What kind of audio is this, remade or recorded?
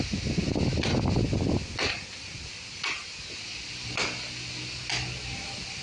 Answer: recorded